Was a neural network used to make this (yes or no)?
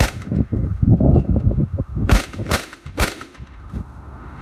yes